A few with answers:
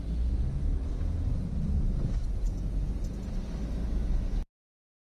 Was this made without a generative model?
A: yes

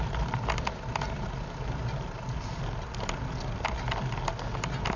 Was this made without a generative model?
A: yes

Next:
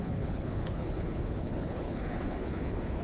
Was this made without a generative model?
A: no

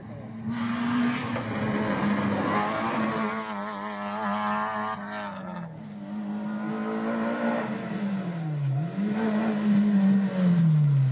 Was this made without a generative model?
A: yes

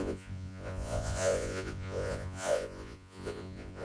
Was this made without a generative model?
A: no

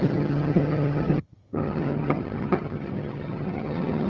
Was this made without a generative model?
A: no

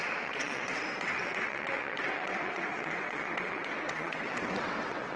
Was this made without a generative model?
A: no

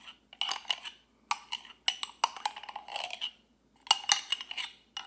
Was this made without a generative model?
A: yes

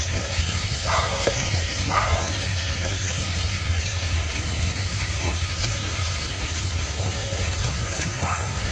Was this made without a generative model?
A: no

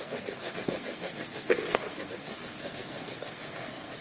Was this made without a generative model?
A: no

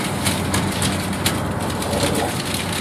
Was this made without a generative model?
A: yes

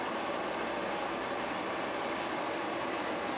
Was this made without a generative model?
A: yes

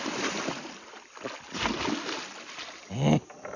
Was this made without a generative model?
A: yes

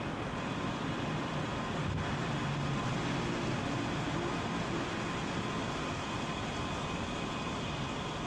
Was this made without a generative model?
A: yes